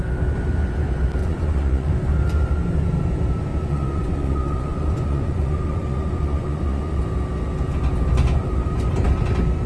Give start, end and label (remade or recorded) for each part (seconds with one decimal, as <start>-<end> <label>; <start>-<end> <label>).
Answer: 0.0-1.2 recorded; 1.2-1.9 remade; 1.9-3.5 recorded; 3.5-7.0 remade; 7.0-9.7 recorded